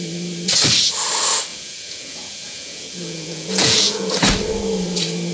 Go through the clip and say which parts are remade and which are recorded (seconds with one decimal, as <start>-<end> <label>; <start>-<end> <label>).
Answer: 0.0-1.5 recorded; 1.5-4.1 remade; 4.1-5.3 recorded